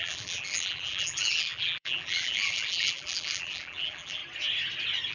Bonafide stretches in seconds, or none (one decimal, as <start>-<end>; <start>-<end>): 4.2-5.1